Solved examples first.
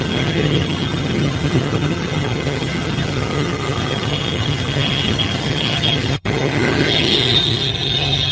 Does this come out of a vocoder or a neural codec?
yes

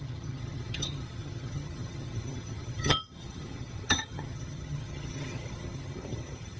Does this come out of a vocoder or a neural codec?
yes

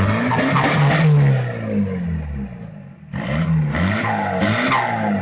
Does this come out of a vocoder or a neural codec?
no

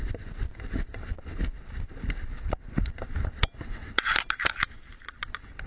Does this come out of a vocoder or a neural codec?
no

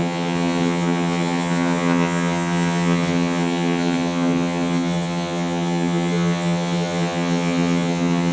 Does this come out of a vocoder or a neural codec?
yes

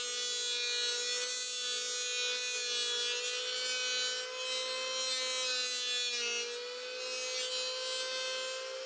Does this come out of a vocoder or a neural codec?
no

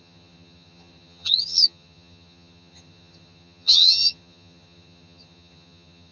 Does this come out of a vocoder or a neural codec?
yes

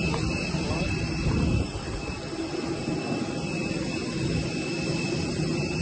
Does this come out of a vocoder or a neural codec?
no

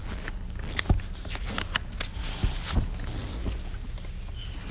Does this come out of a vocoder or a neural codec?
no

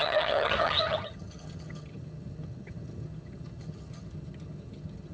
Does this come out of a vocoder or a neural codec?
yes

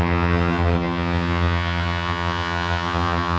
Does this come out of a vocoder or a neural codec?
yes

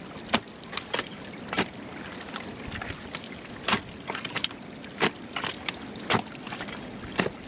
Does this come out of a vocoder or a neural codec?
no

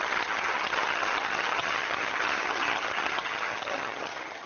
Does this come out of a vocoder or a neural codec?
yes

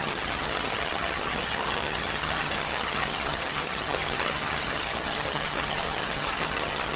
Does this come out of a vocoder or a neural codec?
yes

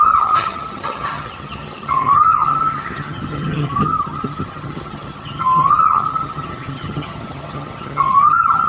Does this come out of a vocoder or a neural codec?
yes